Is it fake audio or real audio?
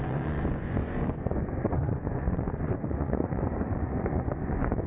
fake